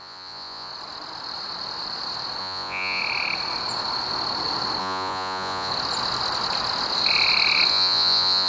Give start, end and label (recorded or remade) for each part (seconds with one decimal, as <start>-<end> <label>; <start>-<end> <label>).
0.0-0.7 remade; 0.7-2.4 recorded; 2.4-3.0 remade; 3.0-4.8 recorded; 4.8-5.7 remade; 5.7-7.7 recorded; 7.7-8.5 remade